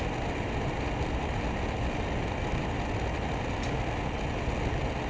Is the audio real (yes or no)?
yes